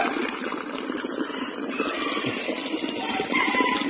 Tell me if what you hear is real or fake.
real